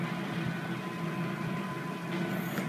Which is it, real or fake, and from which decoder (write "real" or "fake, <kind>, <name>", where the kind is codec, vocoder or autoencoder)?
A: real